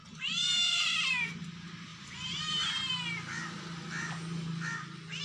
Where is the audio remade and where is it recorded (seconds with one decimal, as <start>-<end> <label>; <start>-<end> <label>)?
0.0-5.2 recorded